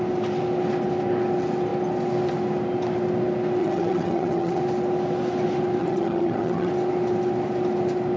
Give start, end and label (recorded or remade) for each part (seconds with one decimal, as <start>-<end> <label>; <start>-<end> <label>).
0.0-3.6 recorded; 3.6-4.6 remade; 4.6-5.8 recorded; 5.8-6.7 remade; 6.7-8.2 recorded